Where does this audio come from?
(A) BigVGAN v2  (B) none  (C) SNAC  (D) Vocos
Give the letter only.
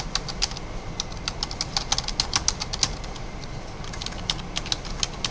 B